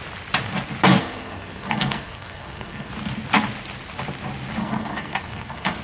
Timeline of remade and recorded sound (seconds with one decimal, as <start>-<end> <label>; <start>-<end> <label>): 0.0-1.0 recorded; 1.0-2.9 remade; 2.9-4.6 recorded; 4.6-5.8 remade